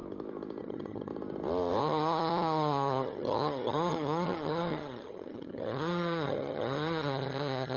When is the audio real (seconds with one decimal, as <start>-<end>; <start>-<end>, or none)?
0.0-0.6; 1.1-1.8